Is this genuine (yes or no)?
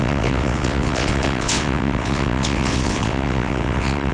no